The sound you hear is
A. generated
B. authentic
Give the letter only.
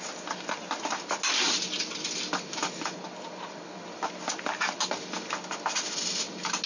B